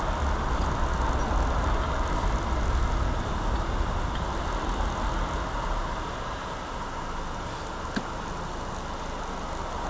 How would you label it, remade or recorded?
recorded